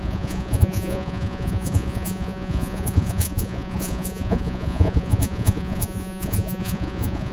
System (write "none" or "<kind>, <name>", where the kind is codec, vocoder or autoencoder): vocoder, Vocos